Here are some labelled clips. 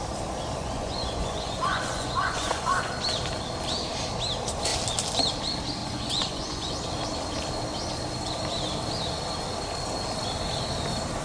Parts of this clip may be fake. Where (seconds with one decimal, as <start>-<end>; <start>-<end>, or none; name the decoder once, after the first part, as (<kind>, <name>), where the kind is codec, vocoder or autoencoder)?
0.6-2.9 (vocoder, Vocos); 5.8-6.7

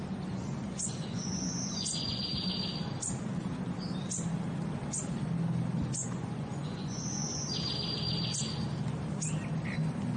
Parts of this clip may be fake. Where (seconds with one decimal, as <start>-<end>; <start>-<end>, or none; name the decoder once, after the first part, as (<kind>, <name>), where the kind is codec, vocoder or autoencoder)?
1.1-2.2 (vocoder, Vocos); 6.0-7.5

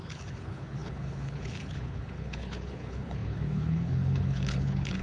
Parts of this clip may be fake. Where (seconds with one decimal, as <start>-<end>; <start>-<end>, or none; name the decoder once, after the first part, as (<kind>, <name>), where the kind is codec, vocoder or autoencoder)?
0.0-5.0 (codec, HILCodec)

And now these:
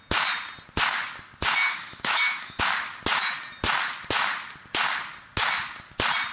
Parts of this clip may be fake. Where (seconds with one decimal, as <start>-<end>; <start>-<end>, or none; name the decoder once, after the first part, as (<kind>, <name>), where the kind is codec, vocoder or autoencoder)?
1.6-2.6 (autoencoder, DAC-VAE)